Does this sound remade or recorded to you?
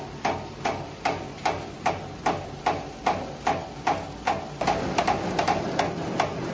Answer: recorded